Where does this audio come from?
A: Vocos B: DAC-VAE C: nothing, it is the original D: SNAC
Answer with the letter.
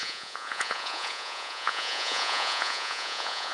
A